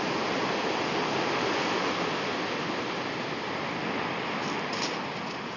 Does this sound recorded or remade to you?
recorded